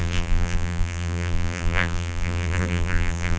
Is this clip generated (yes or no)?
yes